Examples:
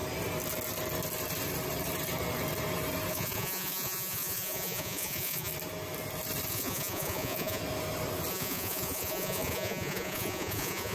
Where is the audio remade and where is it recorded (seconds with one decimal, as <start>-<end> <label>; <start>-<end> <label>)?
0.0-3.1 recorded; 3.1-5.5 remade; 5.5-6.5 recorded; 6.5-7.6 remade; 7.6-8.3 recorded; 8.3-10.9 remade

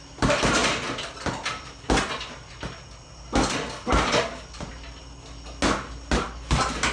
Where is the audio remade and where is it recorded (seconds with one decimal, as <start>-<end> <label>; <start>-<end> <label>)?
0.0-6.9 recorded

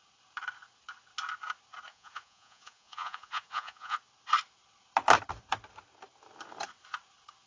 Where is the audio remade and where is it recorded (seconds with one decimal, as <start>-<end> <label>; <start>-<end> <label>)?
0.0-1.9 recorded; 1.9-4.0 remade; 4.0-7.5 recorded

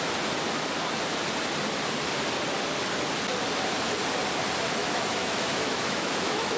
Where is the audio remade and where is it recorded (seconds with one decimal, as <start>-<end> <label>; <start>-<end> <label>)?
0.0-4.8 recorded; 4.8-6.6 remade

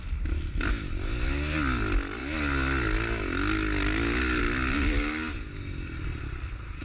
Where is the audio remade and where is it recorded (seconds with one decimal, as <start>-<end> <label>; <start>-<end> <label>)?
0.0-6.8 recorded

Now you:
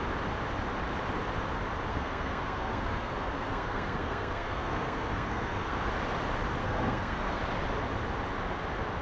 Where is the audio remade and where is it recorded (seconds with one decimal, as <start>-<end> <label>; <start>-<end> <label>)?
0.0-1.9 recorded; 1.9-5.9 remade; 5.9-6.6 recorded; 6.6-7.4 remade; 7.4-9.0 recorded

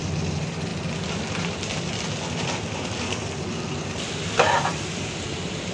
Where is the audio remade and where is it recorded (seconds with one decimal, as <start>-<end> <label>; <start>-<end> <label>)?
0.0-5.7 remade

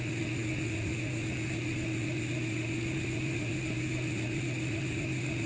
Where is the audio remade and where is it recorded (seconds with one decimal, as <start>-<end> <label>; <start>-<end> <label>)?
0.0-5.5 recorded